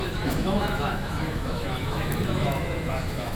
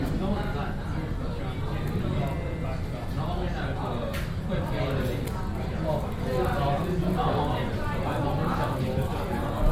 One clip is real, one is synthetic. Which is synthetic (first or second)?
first